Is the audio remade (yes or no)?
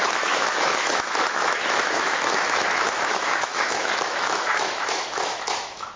yes